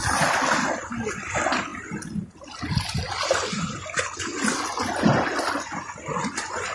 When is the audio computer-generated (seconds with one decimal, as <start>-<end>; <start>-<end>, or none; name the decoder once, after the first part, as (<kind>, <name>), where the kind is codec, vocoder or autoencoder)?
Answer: none